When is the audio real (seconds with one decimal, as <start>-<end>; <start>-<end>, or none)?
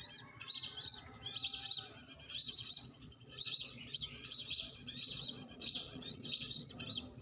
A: 0.0-2.4; 6.7-7.2